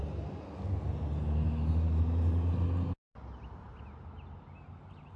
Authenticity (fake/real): real